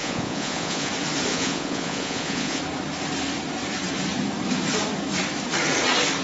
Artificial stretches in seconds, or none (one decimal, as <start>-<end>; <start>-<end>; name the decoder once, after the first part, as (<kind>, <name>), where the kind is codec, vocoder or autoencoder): 0.0-0.9 (vocoder, Vocos); 1.3-2.6